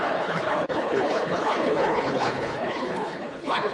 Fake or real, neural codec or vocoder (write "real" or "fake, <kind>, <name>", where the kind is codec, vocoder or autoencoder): fake, codec, HILCodec